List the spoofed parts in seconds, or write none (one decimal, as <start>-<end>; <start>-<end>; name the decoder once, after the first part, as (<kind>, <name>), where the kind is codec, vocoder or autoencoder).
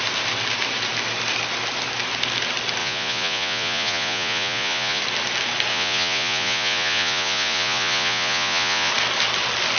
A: 2.8-5.0 (vocoder, Vocos); 5.7-8.9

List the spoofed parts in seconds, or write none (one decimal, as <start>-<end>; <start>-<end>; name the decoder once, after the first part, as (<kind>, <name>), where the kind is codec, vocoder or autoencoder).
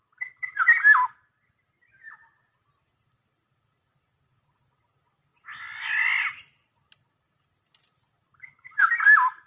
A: none